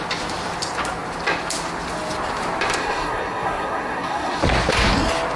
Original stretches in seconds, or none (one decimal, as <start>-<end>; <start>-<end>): 0.0-2.8; 4.4-5.4